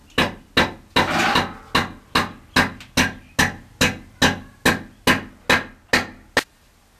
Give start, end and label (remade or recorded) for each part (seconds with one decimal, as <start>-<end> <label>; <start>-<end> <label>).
0.0-7.0 recorded